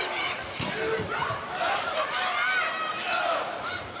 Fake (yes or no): no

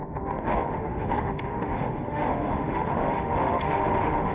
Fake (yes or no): yes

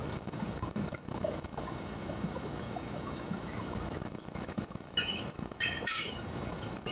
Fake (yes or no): yes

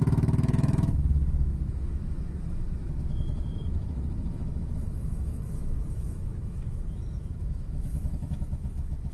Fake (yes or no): yes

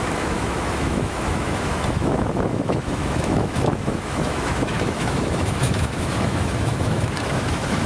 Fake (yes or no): yes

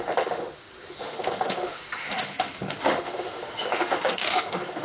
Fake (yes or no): yes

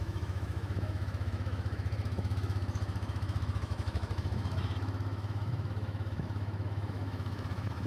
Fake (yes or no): yes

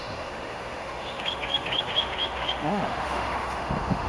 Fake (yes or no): yes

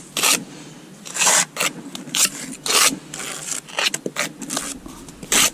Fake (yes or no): no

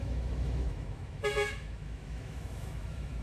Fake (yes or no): yes